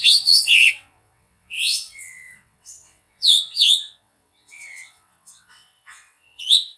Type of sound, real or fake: fake